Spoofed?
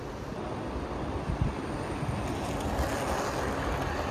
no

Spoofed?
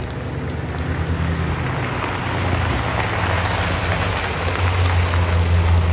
no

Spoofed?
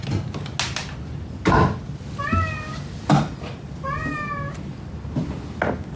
no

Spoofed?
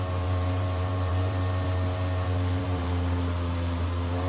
yes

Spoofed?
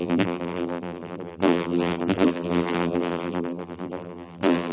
yes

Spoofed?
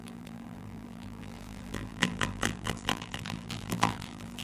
yes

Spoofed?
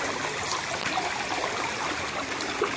no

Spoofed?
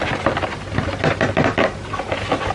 no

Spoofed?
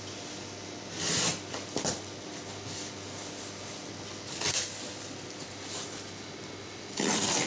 yes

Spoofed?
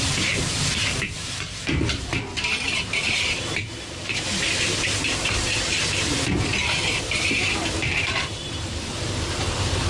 yes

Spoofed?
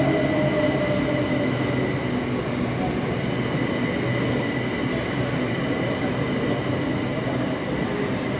no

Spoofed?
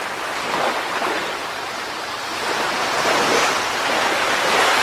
no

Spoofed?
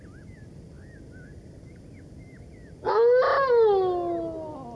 no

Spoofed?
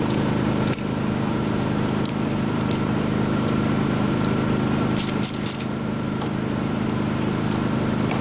yes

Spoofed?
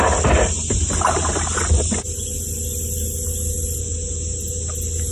no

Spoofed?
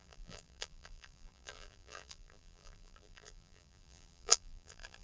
yes